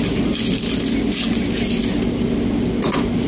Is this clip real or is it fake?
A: real